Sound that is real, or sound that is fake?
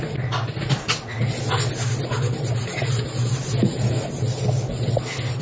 real